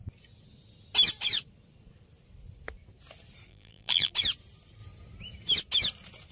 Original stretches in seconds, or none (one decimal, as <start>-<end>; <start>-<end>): 0.0-3.5; 4.1-6.3